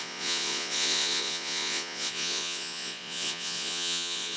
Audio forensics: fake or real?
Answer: fake